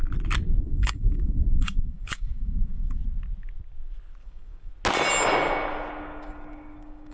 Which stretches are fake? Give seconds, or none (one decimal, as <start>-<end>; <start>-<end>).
0.6-3.0; 4.2-4.7; 6.0-7.1